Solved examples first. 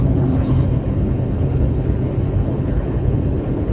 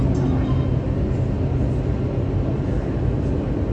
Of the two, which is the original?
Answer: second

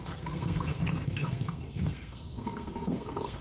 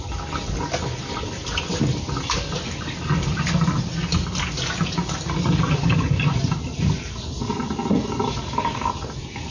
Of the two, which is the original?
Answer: second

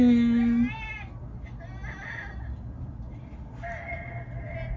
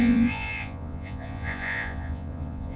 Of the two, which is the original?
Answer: first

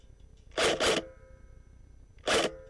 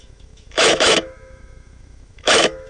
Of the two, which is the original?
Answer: first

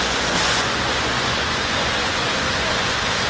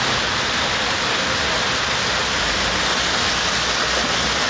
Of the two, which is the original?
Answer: second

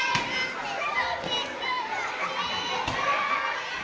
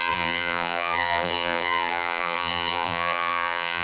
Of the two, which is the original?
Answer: first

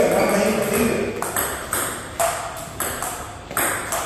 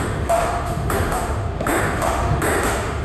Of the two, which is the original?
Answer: first